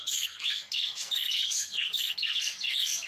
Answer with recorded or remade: remade